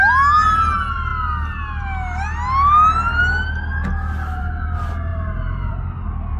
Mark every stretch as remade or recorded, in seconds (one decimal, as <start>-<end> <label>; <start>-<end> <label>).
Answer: 0.0-6.4 recorded